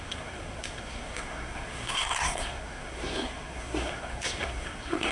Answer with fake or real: fake